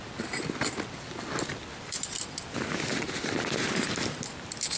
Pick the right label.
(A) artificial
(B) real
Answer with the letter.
B